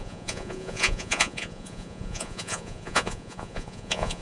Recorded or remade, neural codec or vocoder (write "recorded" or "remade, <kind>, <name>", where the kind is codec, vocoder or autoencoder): remade, vocoder, Vocos